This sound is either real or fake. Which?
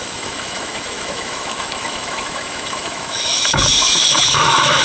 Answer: fake